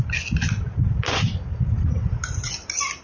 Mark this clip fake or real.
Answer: real